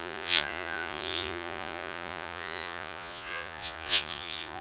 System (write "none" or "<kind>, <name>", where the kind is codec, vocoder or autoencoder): vocoder, Vocos